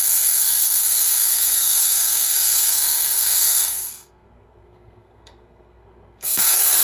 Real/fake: fake